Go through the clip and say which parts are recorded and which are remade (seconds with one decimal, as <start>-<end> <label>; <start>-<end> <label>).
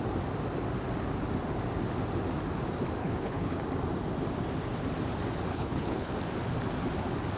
0.0-3.0 recorded; 3.0-3.6 remade; 3.6-5.5 recorded; 5.5-6.1 remade; 6.1-7.4 recorded